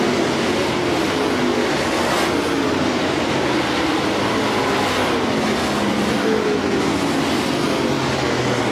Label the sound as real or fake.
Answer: real